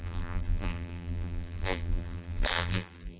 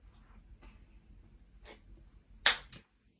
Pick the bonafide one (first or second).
second